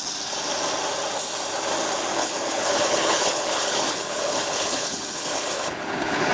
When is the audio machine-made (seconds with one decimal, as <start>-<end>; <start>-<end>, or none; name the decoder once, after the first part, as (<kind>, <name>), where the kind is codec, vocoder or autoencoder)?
2.1-6.3 (codec, HILCodec)